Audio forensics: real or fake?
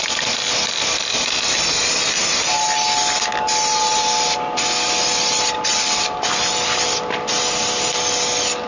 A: real